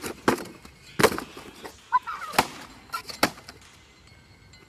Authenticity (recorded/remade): recorded